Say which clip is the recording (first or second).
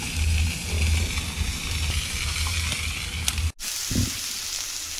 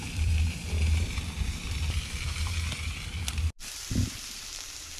first